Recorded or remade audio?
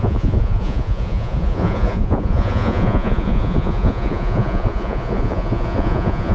remade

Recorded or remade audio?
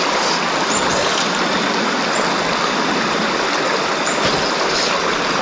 recorded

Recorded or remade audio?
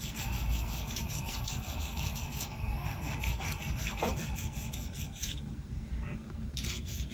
remade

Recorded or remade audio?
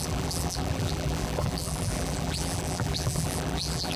remade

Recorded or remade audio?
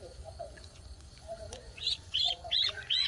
remade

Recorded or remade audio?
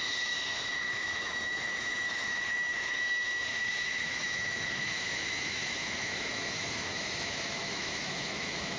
remade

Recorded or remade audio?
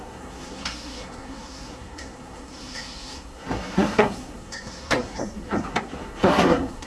remade